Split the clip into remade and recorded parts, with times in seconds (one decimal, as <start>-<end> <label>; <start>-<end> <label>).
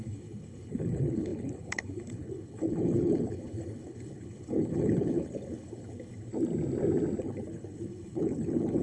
0.0-6.3 remade; 6.3-7.2 recorded; 7.2-8.8 remade